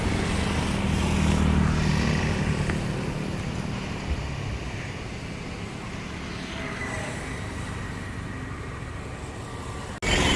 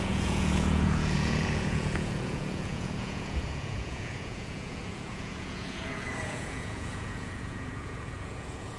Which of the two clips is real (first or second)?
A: first